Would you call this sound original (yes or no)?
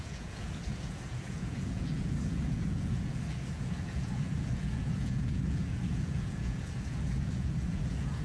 no